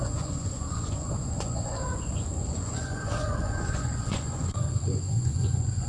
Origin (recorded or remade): remade